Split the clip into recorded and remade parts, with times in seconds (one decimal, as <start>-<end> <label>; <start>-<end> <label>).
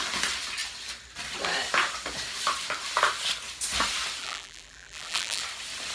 0.0-4.2 recorded; 4.2-5.4 remade; 5.4-5.9 recorded